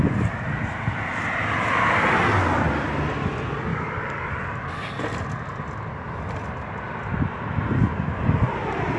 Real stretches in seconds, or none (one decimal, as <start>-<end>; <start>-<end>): 0.0-3.7; 4.3-9.0